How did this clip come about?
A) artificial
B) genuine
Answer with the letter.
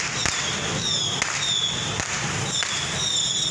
B